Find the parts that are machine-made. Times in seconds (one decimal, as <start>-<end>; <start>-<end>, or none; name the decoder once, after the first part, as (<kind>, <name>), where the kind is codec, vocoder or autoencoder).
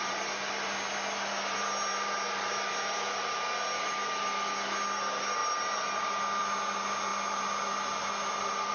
none